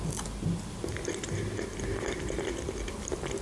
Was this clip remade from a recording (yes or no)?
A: no